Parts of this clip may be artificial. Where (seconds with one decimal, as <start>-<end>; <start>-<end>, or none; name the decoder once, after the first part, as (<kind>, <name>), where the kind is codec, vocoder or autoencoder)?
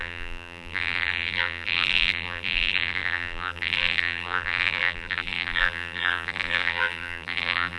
0.0-7.8 (vocoder, BigVGAN v2)